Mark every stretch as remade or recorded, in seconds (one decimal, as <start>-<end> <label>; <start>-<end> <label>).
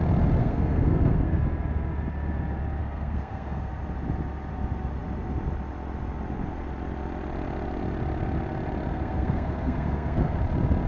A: 0.0-0.4 recorded; 0.4-1.4 remade; 1.4-2.8 recorded; 2.8-3.7 remade; 3.7-8.9 recorded; 8.9-10.4 remade; 10.4-10.9 recorded